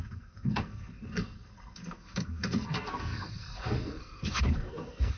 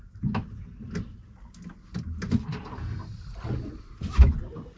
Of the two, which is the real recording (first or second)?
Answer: second